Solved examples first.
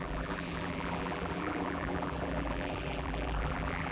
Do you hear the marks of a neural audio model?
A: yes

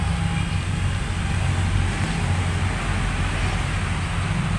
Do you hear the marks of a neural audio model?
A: no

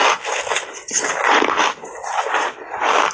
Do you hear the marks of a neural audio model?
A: no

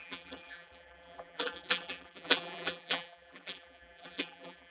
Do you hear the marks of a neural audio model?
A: yes